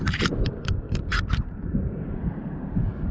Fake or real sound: fake